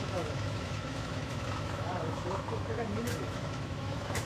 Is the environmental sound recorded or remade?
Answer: remade